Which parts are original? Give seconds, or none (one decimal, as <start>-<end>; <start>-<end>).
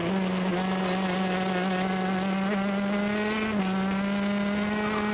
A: 0.0-5.1